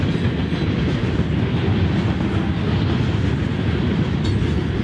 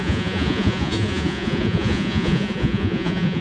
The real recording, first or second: first